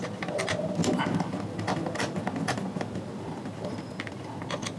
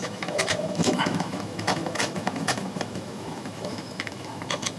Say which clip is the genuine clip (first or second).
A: first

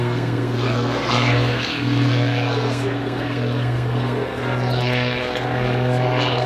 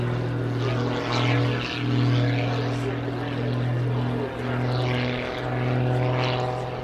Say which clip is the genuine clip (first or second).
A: second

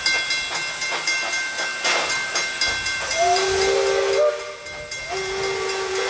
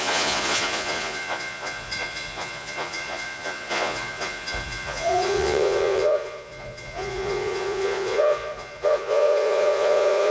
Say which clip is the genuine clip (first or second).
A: first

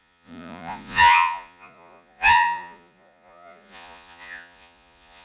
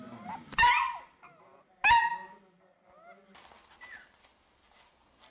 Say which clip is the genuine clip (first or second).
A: second